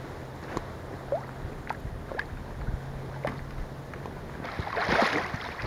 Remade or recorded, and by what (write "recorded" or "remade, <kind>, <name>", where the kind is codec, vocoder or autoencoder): recorded